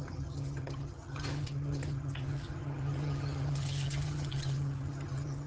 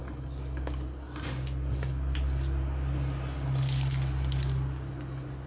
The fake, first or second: first